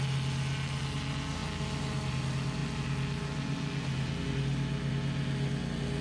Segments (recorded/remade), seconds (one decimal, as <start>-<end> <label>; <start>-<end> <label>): 0.0-6.0 recorded